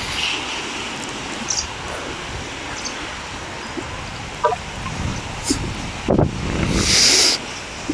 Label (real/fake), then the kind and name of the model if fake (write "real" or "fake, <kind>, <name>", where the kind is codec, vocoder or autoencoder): real